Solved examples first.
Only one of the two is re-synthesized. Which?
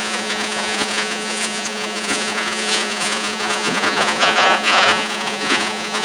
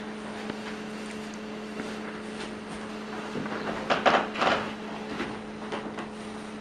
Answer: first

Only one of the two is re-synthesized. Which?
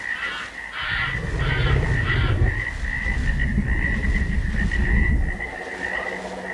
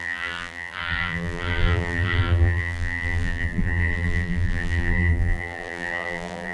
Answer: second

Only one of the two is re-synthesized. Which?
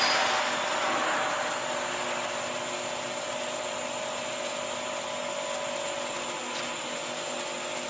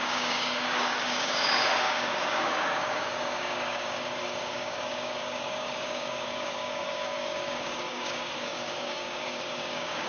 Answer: second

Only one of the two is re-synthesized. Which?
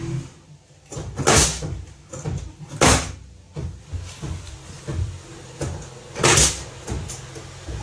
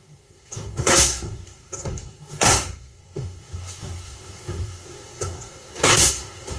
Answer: second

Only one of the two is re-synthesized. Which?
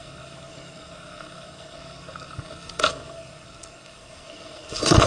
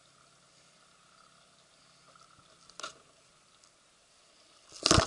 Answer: first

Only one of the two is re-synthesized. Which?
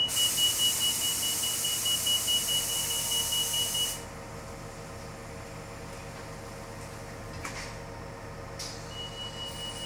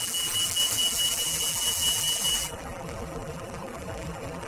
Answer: second